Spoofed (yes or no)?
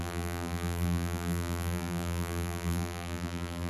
yes